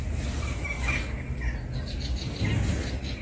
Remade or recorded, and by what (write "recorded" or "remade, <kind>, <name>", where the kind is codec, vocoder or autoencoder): recorded